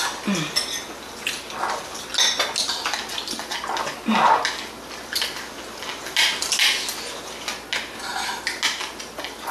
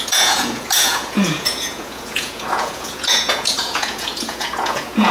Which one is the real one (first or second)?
first